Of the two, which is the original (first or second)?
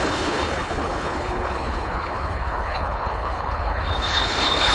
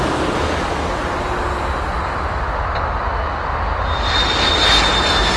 second